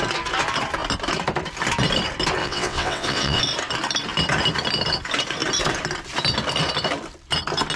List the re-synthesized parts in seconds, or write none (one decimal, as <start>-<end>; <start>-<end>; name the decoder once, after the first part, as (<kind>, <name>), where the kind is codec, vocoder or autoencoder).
2.4-3.4 (vocoder, WaveNeXt)